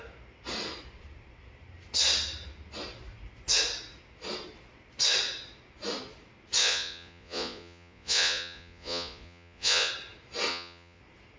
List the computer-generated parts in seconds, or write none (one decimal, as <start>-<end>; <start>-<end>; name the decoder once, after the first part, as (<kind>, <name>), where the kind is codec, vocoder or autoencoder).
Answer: 6.6-9.9 (vocoder, Vocos); 10.5-11.0